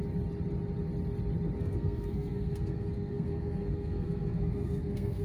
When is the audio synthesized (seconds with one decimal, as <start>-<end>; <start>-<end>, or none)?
1.6-5.2